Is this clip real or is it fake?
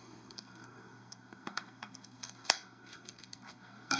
fake